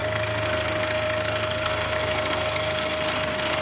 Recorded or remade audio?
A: remade